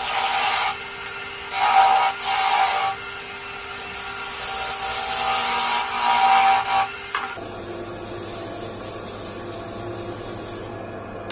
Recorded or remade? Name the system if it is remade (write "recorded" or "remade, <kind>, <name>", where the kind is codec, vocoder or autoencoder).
recorded